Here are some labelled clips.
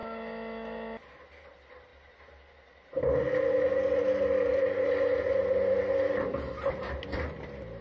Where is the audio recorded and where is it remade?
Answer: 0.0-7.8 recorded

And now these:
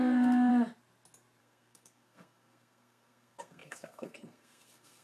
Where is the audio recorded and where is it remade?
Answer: 0.0-0.5 remade; 0.5-1.4 recorded; 1.4-5.0 remade

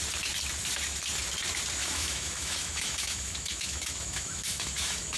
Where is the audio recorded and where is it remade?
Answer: 0.0-1.8 recorded; 1.8-5.2 remade